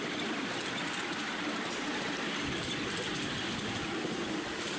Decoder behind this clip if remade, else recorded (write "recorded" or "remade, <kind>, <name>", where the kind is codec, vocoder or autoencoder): recorded